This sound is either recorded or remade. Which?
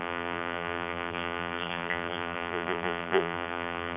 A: remade